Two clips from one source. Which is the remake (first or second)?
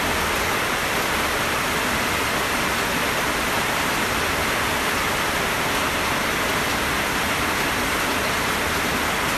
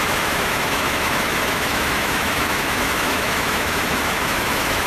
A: second